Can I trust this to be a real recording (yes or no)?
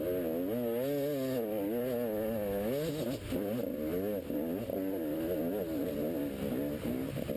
yes